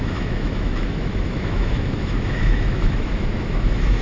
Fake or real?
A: fake